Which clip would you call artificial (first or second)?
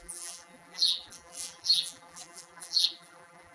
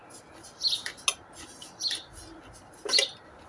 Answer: first